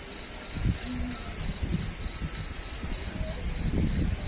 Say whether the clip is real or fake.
real